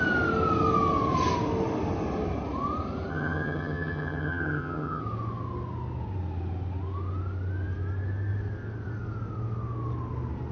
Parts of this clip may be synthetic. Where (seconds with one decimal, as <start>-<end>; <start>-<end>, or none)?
3.1-5.0